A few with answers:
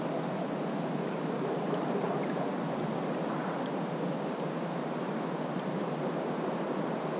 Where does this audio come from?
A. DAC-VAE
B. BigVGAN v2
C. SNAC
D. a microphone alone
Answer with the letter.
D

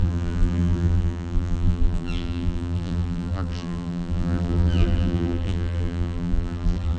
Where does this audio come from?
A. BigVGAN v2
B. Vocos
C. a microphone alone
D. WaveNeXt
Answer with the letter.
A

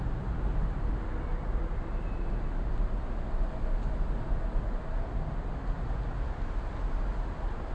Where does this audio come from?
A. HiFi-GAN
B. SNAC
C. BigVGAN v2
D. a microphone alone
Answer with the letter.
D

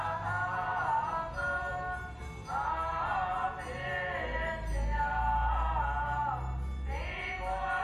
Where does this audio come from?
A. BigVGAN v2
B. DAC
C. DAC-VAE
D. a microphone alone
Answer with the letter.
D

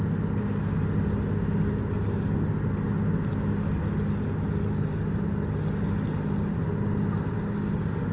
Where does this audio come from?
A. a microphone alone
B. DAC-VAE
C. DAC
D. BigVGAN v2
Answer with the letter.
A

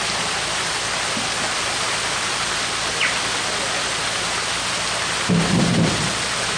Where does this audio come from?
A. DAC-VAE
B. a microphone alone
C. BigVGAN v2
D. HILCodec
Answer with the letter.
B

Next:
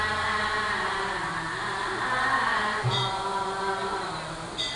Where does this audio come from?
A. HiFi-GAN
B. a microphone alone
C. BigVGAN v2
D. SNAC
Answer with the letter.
B